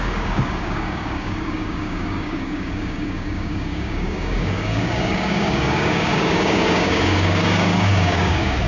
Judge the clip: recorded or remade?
remade